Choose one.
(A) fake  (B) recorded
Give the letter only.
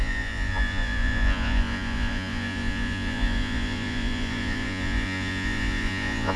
A